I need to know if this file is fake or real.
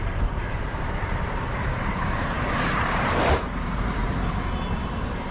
fake